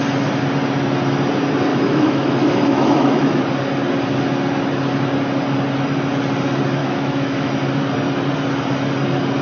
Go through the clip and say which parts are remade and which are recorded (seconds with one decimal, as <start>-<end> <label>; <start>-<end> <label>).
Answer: 0.0-1.7 recorded; 1.7-3.4 remade; 3.4-6.8 recorded; 6.8-7.5 remade; 7.5-9.4 recorded